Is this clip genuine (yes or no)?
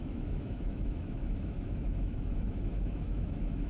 no